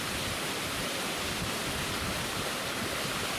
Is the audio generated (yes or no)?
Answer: no